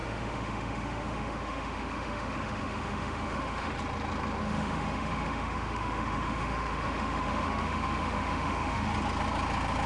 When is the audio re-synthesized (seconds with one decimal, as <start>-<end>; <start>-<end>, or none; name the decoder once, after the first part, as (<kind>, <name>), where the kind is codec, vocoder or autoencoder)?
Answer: 0.0-3.7 (autoencoder, DAC-VAE); 4.4-8.9